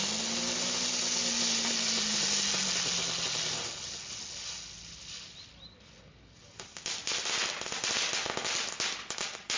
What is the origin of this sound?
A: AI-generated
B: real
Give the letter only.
B